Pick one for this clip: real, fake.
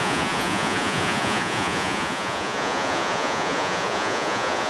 fake